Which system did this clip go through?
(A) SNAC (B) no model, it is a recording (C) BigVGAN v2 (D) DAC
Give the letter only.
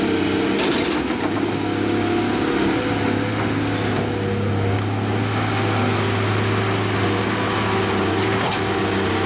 B